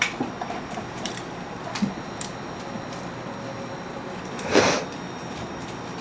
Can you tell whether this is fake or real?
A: fake